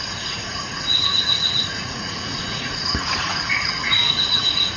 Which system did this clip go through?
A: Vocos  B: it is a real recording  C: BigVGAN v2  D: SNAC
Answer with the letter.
A